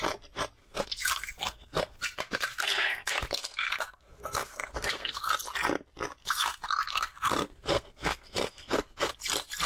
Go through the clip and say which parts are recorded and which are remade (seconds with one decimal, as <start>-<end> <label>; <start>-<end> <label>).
0.0-0.6 recorded; 0.6-5.3 remade; 5.3-6.2 recorded; 6.2-9.1 remade; 9.1-9.7 recorded